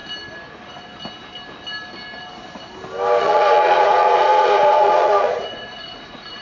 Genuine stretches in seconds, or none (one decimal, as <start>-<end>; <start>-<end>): 0.0-3.2